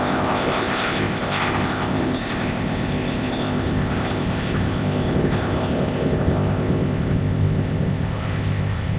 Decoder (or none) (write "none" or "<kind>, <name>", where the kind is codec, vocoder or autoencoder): codec, ZipCodec